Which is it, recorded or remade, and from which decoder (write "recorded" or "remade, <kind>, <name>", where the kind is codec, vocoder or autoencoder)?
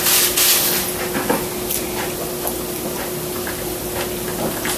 recorded